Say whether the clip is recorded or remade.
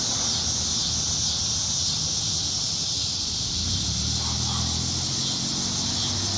recorded